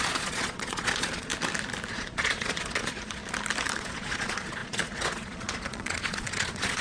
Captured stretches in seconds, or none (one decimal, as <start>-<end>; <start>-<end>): 1.3-1.9; 3.2-3.8